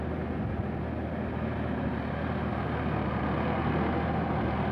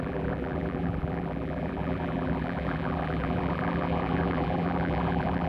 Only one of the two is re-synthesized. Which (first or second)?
second